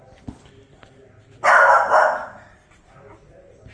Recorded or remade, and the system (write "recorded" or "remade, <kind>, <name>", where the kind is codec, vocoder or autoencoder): recorded